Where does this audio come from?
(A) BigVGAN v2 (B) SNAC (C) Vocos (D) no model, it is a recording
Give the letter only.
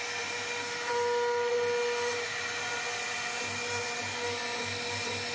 D